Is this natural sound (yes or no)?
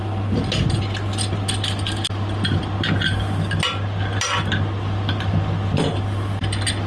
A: yes